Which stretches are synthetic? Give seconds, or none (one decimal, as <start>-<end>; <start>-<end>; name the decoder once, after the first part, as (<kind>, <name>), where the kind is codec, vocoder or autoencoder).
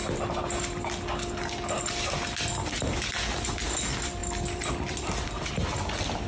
4.2-5.5 (vocoder, BigVGAN v2)